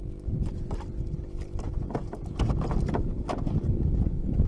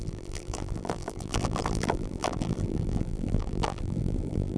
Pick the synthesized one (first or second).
second